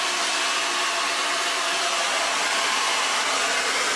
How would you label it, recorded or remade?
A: recorded